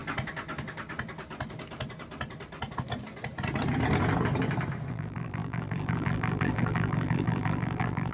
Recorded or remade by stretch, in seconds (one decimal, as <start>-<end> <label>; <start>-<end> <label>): 0.0-4.9 recorded; 4.9-8.1 remade